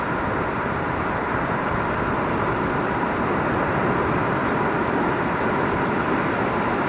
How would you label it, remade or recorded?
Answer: recorded